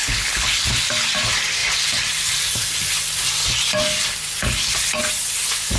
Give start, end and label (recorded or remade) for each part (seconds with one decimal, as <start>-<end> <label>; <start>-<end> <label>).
0.0-0.8 remade; 0.8-5.8 recorded